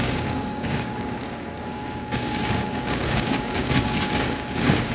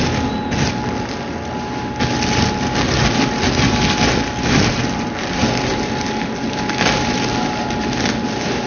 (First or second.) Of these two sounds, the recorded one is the second